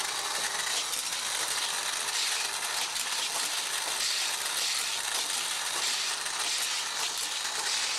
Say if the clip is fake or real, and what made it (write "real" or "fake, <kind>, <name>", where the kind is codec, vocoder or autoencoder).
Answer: real